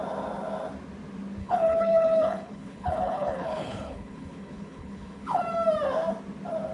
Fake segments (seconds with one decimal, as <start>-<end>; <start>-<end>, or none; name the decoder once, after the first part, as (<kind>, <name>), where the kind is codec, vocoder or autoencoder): 1.4-5.4 (codec, HILCodec)